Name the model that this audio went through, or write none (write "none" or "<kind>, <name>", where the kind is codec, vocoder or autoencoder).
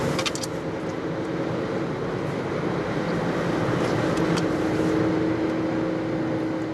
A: none